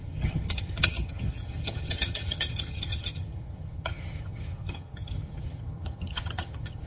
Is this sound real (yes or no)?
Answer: no